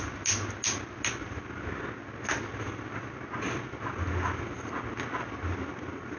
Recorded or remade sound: recorded